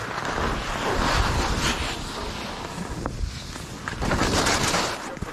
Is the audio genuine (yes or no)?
yes